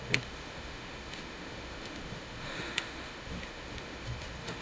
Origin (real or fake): fake